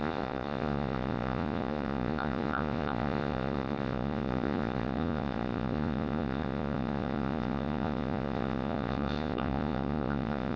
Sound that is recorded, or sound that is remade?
remade